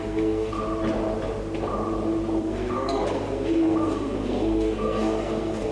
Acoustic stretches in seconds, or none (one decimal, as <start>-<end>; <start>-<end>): 0.5-2.4